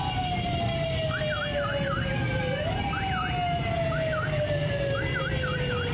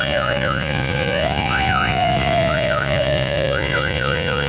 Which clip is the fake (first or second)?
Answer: second